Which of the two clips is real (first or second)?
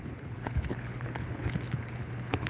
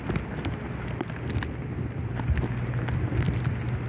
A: second